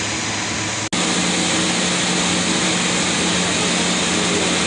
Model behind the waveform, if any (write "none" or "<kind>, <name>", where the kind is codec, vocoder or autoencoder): none